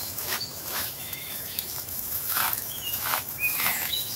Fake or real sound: fake